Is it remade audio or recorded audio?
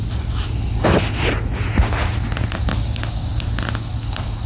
recorded